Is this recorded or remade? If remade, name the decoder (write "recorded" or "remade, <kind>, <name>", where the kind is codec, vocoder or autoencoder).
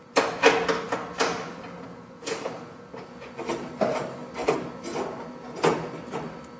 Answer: recorded